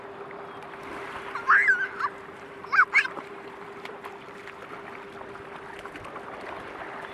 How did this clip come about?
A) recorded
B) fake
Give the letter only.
A